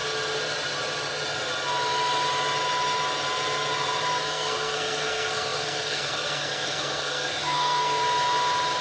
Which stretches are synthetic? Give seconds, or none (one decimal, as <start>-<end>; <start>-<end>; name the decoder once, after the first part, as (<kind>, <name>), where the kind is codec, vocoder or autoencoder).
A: 4.3-8.0 (codec, SNAC)